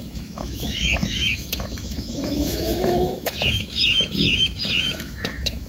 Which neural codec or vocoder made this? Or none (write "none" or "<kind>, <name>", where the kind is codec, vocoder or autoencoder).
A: autoencoder, DAC-VAE